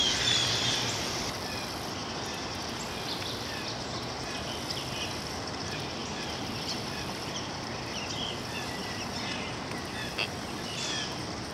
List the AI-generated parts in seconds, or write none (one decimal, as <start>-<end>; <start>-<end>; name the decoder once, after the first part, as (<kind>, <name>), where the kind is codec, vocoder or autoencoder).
0.0-8.8 (vocoder, BigVGAN v2)